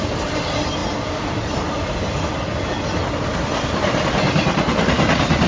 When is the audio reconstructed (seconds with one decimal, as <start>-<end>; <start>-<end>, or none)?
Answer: none